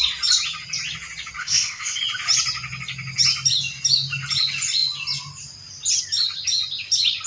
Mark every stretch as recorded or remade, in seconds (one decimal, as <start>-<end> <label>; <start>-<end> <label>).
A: 0.0-1.4 recorded; 1.4-2.0 remade; 2.0-7.3 recorded